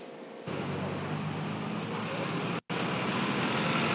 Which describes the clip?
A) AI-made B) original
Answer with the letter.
B